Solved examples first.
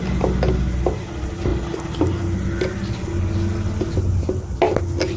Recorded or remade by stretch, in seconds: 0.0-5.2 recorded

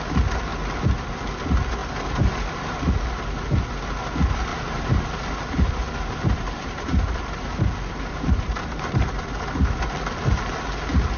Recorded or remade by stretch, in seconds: 0.0-1.8 recorded; 1.8-2.9 remade; 2.9-4.5 recorded; 4.5-9.2 remade; 9.2-11.2 recorded

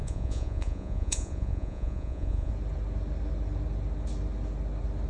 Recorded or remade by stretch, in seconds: 0.0-2.5 remade; 2.5-5.1 recorded

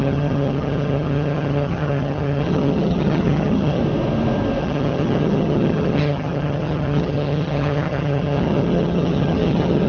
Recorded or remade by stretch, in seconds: 0.0-3.8 remade; 3.8-4.6 recorded; 4.6-9.9 remade

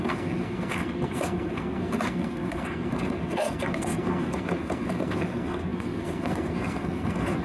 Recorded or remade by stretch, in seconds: 0.0-7.4 remade